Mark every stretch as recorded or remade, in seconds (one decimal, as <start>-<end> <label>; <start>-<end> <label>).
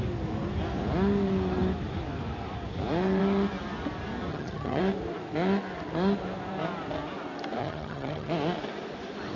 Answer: 0.0-4.3 recorded; 4.3-4.8 remade; 4.8-7.6 recorded; 7.6-8.3 remade; 8.3-9.4 recorded